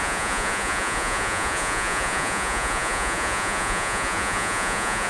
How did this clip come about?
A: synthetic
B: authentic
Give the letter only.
A